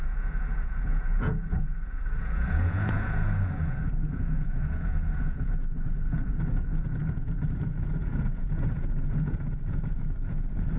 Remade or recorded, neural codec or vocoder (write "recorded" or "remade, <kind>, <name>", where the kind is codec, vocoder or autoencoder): remade, vocoder, Vocos